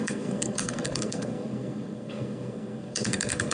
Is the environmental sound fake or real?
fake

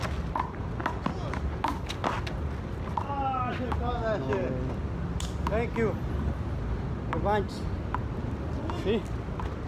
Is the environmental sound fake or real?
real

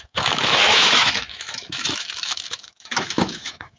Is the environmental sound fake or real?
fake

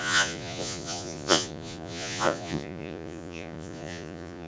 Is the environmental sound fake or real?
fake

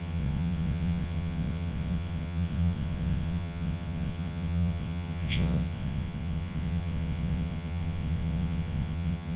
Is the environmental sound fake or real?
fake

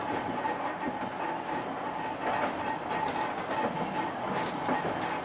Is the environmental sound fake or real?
real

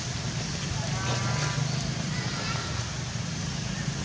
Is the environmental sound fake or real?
real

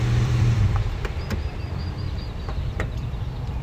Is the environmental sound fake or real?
fake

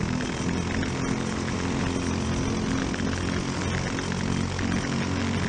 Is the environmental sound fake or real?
real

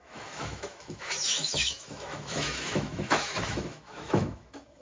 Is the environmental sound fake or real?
fake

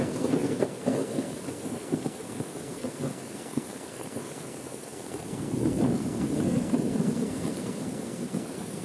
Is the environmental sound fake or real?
fake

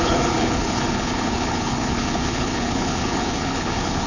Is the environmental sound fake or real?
fake